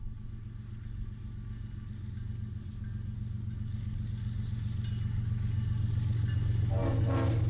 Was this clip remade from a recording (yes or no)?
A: no